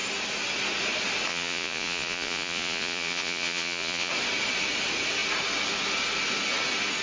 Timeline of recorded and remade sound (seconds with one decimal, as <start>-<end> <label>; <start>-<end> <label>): 0.0-1.3 recorded; 1.3-4.1 remade; 4.1-7.0 recorded